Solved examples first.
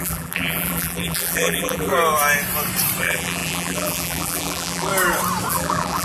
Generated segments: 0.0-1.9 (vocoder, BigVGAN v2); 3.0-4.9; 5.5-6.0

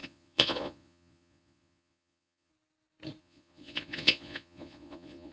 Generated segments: 0.0-2.5 (vocoder, Vocos); 3.2-5.3

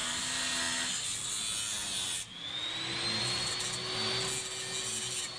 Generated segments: none

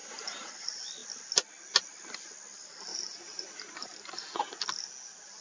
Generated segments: 0.0-0.5 (vocoder, BigVGAN v2); 2.9-4.1

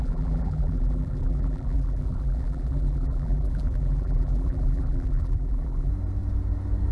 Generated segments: 0.0-5.9 (vocoder, BigVGAN v2)

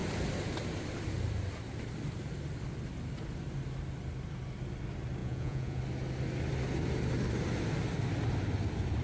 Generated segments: 5.2-5.8 (vocoder, Vocos)

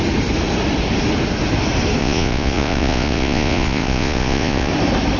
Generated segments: 2.0-4.7 (vocoder, Vocos)